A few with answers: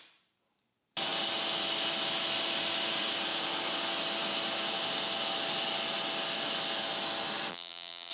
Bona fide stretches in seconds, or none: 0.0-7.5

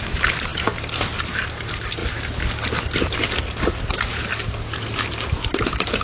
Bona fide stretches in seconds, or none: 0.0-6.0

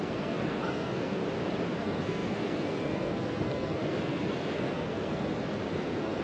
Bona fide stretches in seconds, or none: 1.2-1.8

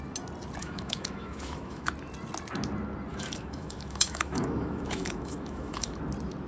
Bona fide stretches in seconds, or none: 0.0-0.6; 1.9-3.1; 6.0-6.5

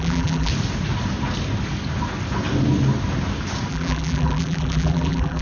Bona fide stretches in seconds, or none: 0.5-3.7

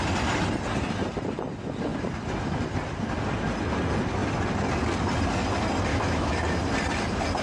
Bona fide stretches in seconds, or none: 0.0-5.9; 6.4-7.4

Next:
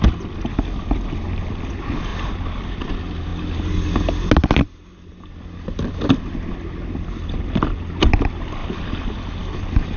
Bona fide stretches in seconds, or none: 0.0-10.0

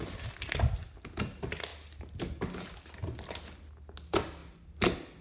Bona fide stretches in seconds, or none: 0.0-5.2